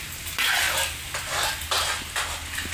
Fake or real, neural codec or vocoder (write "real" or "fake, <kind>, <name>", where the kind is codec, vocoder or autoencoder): real